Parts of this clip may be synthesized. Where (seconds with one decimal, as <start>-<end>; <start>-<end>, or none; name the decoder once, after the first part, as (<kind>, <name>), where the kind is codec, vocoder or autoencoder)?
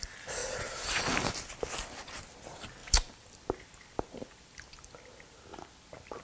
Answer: 0.0-0.4 (vocoder, BigVGAN v2); 1.0-5.5